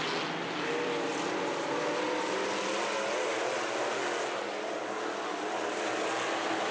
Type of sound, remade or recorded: recorded